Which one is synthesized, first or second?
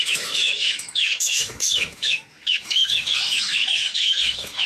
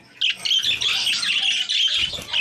first